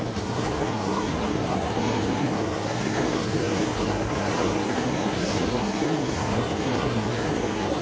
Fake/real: fake